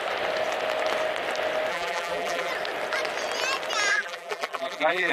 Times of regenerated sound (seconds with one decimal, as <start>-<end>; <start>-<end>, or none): 1.7-2.5; 3.9-5.1